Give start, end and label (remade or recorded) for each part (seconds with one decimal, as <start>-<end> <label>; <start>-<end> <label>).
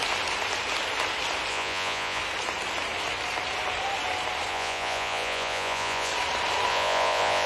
0.0-1.5 recorded; 1.5-2.2 remade; 2.2-4.5 recorded; 4.5-6.1 remade; 6.1-6.7 recorded; 6.7-7.5 remade